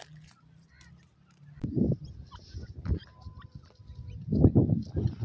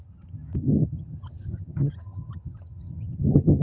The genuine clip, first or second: first